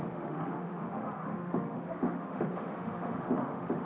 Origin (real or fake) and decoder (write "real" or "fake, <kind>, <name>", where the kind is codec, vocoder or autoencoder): fake, autoencoder, DAC-VAE